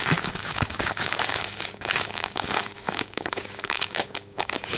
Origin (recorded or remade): remade